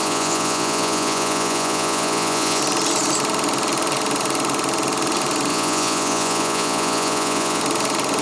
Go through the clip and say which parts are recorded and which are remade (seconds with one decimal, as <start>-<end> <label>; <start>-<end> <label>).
0.0-2.6 remade; 2.6-5.5 recorded; 5.5-7.6 remade; 7.6-8.2 recorded